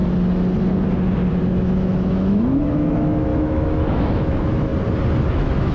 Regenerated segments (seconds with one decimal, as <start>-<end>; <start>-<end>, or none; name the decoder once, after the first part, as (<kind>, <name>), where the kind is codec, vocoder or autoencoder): 1.4-4.7 (autoencoder, DAC-VAE); 5.3-5.7